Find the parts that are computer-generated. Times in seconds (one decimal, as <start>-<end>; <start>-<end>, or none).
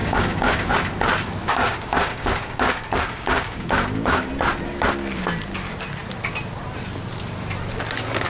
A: 0.0-0.7; 1.4-4.3